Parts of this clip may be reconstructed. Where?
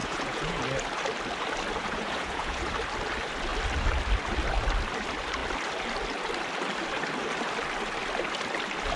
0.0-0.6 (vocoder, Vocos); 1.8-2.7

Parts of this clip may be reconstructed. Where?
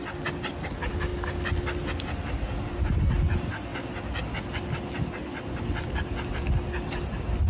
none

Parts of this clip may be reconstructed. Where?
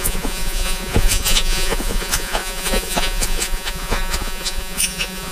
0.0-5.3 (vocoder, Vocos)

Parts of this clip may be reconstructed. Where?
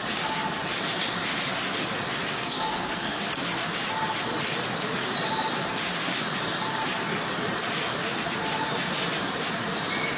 2.4-3.3 (codec, SNAC)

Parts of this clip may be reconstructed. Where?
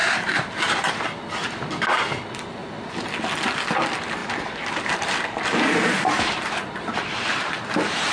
0.0-0.9 (vocoder, BigVGAN v2); 4.2-7.5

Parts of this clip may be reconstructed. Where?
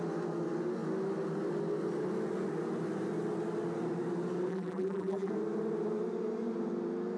4.5-5.3 (vocoder, BigVGAN v2)